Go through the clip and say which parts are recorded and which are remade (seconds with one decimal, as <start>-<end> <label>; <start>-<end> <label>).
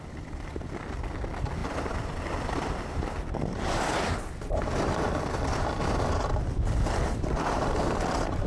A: 0.0-8.5 recorded